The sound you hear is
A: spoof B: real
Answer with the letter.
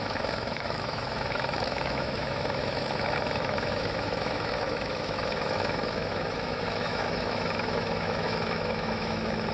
A